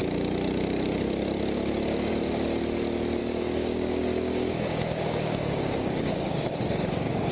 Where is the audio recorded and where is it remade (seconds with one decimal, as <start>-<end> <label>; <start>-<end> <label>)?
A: 0.0-3.2 recorded; 3.2-7.3 remade

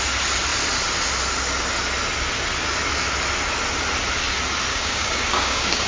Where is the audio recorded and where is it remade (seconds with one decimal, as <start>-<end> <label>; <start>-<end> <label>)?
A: 0.0-4.7 recorded; 4.7-5.9 remade

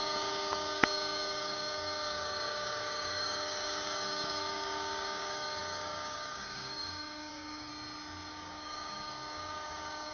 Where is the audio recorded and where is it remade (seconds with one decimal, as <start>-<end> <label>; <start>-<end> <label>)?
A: 0.0-7.7 remade; 7.7-8.3 recorded; 8.3-10.1 remade

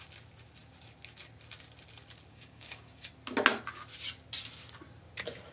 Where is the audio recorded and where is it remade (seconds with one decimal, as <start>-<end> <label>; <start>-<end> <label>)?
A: 0.0-2.3 recorded; 2.3-3.1 remade; 3.1-5.5 recorded

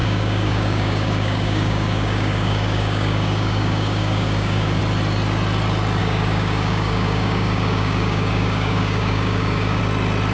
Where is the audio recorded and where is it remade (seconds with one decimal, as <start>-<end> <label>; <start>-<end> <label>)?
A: 0.0-4.8 remade; 4.8-6.0 recorded; 6.0-9.8 remade; 9.8-10.3 recorded

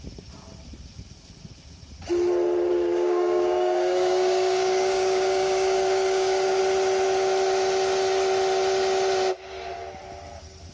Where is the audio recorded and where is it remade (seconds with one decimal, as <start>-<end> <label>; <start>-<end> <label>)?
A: 0.0-2.7 recorded; 2.7-6.6 remade; 6.6-10.7 recorded

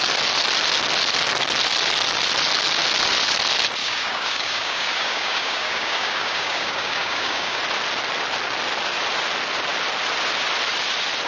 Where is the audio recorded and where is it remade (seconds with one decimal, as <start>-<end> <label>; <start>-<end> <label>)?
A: 0.0-3.8 recorded; 3.8-7.6 remade; 7.6-11.3 recorded

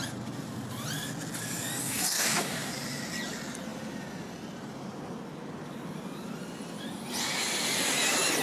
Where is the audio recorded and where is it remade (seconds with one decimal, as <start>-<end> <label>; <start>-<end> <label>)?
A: 0.0-1.8 recorded; 1.8-2.7 remade; 2.7-8.4 recorded